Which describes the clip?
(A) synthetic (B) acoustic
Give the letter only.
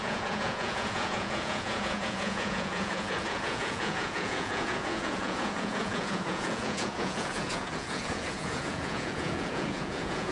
A